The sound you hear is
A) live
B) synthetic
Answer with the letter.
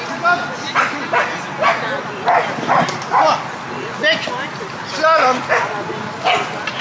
A